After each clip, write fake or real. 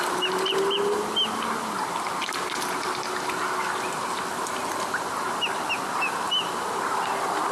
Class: real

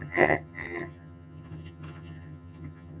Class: fake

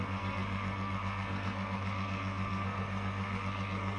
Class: fake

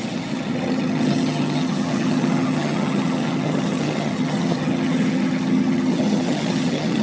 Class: fake